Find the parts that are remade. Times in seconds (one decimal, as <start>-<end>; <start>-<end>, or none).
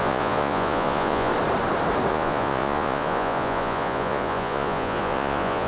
0.0-1.3; 2.1-5.7